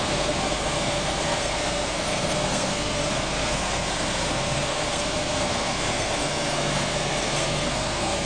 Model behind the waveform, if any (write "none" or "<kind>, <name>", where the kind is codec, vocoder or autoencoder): codec, SNAC